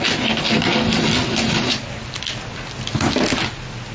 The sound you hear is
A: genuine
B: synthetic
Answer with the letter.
A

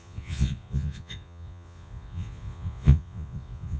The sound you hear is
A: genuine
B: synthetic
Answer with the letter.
B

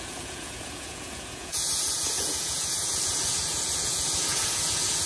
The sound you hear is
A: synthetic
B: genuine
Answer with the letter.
A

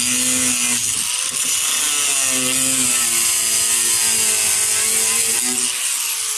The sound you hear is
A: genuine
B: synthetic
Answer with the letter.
A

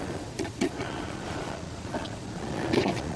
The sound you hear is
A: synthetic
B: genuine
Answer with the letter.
A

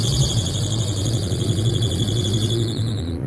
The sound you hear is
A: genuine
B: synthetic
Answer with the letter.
B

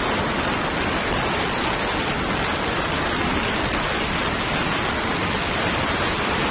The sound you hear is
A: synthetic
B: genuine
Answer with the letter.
B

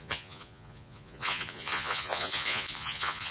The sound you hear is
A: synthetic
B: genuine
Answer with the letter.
A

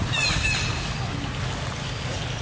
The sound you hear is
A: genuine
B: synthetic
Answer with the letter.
A